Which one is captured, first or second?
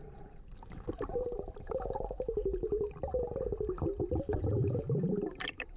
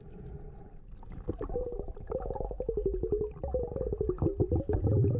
second